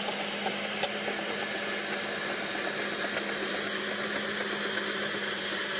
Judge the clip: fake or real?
real